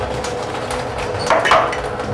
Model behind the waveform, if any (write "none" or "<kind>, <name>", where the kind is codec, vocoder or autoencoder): none